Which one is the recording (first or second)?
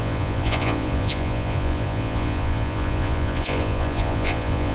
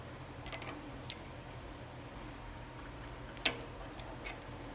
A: second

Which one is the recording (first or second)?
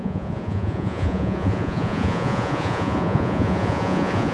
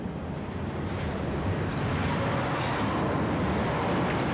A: second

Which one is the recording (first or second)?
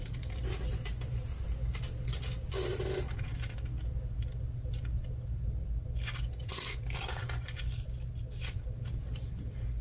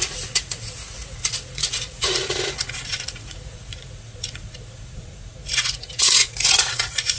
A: first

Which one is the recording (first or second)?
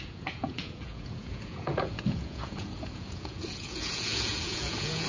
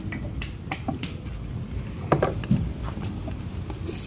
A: second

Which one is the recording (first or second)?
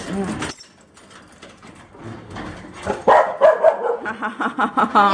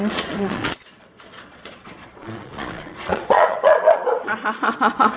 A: first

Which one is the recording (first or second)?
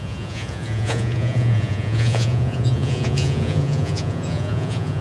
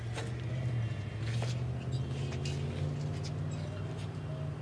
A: second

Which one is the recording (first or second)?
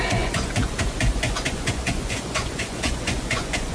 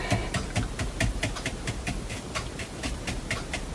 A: second